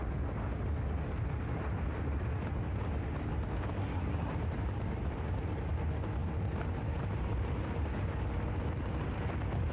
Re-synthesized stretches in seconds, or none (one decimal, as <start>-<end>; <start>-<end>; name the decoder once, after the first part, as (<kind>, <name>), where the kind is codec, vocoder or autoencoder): 3.8-4.3 (codec, SNAC)